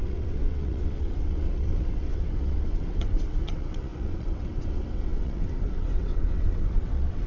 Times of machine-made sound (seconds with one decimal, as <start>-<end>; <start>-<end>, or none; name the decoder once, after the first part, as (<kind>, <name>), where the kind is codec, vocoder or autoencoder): 0.0-7.3 (vocoder, WaveNeXt)